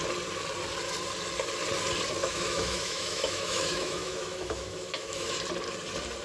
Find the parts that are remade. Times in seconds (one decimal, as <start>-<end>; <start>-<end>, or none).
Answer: 2.2-5.4